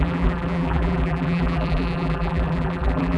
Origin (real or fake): fake